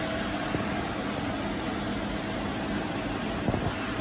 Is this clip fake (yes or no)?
no